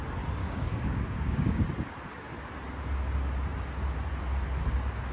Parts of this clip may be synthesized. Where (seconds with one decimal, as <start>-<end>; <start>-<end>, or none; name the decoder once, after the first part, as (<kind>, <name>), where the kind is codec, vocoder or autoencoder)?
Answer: 0.4-1.6 (codec, DAC)